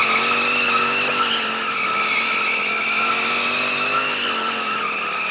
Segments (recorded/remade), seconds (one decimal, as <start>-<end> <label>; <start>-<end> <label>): 0.0-5.3 recorded